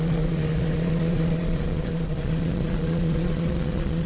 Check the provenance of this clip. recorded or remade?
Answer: remade